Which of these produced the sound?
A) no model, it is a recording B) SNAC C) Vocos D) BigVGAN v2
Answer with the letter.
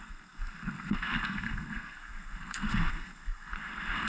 B